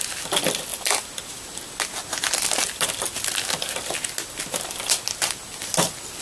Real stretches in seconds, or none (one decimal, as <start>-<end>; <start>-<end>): 0.0-6.2

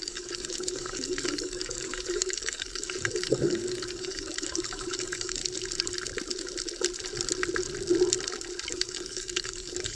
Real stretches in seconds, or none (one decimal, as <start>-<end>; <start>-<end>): 5.4-8.7

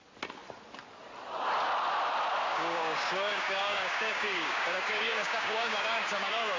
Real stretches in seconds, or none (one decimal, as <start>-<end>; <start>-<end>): 0.0-2.5

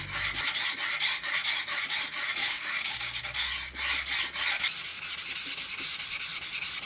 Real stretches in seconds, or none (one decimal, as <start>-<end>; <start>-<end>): 0.0-2.4; 3.2-6.9

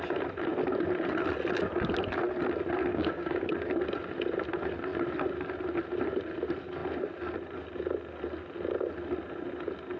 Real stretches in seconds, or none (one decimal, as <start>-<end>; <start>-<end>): 0.0-2.9; 3.5-10.0

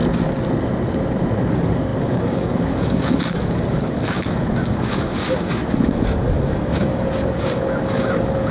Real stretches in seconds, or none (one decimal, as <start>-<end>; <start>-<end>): 0.0-1.5

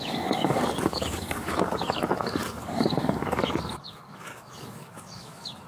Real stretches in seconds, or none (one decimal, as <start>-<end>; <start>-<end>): none

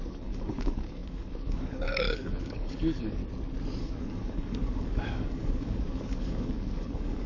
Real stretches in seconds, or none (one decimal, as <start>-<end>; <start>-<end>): 3.2-3.8